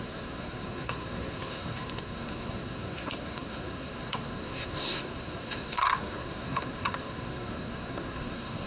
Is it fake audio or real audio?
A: fake